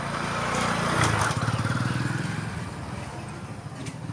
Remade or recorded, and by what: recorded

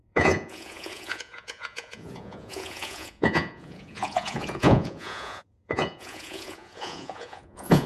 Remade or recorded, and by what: remade, vocoder, Vocos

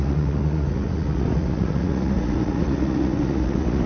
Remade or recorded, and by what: remade, vocoder, Vocos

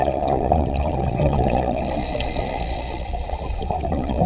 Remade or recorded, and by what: remade, vocoder, Vocos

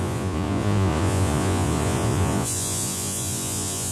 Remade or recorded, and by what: remade, vocoder, Vocos